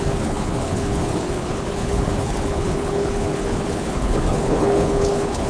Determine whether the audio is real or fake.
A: fake